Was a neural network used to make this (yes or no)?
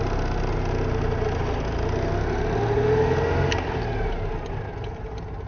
no